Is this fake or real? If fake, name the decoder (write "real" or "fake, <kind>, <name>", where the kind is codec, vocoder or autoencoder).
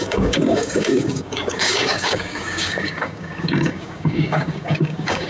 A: fake, codec, DAC